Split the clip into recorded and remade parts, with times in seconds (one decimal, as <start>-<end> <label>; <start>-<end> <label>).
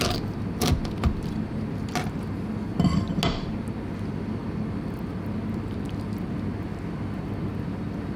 0.0-8.2 recorded